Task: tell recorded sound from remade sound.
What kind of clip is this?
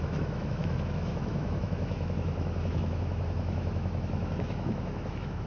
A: remade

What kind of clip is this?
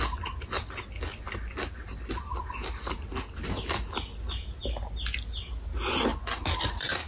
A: recorded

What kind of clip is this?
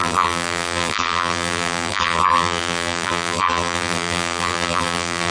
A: remade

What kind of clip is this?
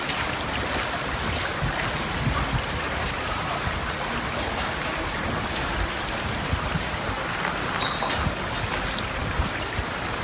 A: recorded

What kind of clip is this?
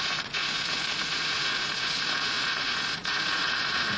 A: remade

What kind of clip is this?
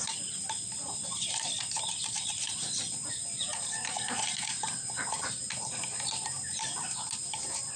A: recorded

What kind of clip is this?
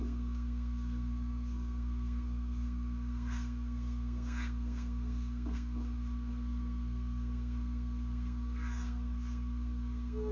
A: remade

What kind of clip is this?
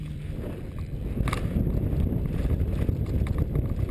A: recorded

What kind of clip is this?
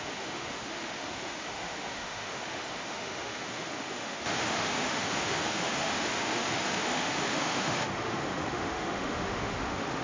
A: remade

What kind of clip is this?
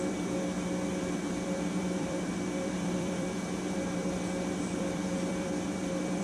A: remade